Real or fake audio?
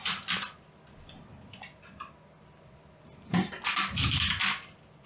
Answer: real